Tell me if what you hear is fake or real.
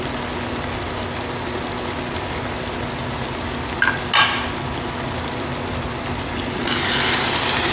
real